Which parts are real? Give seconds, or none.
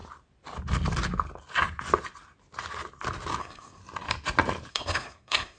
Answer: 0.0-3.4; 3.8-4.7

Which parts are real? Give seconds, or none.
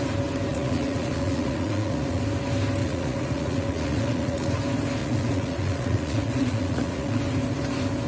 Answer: 0.0-0.5; 2.2-2.8; 4.6-5.0; 7.2-8.1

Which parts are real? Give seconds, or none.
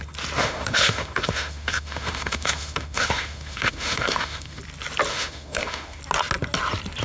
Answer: 0.0-0.4; 4.6-5.1; 6.0-7.0